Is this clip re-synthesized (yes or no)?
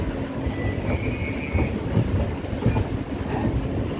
no